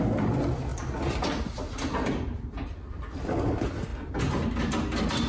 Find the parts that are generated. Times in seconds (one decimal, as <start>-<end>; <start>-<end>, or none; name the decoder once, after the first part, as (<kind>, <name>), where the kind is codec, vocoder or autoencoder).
none